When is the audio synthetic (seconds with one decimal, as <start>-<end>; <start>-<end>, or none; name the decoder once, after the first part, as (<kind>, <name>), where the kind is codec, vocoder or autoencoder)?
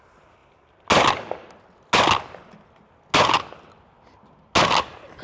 none